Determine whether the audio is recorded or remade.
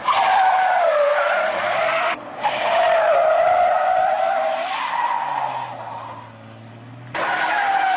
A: recorded